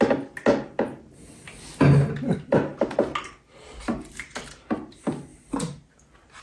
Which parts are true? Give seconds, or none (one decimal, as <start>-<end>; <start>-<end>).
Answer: 0.0-6.4